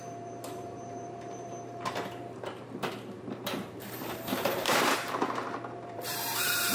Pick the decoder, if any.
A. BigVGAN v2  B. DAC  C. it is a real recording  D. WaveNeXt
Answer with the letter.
A